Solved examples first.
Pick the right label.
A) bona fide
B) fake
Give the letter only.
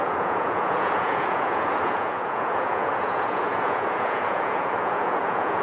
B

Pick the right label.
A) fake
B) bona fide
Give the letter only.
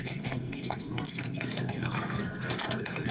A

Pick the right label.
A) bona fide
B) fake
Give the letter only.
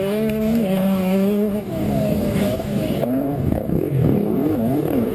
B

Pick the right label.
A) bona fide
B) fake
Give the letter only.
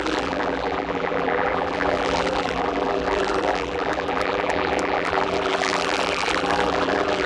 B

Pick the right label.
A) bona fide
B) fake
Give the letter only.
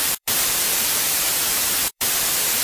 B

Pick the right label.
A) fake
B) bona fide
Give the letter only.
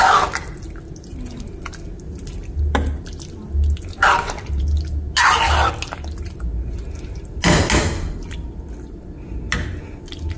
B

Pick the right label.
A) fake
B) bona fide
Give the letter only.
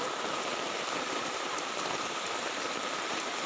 A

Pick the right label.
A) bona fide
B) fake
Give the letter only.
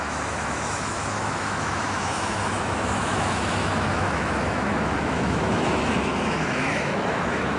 B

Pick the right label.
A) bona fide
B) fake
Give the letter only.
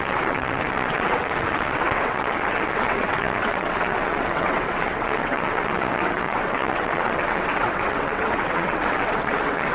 B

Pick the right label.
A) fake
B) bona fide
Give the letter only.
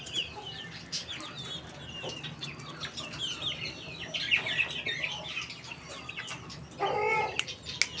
B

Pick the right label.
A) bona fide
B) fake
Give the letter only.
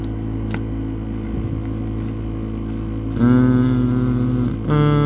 A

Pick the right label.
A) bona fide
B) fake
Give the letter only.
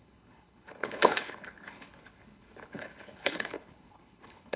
B